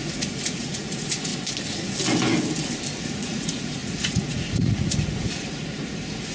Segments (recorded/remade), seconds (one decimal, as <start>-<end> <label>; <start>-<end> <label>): 0.0-1.3 remade; 1.3-3.0 recorded; 3.0-6.3 remade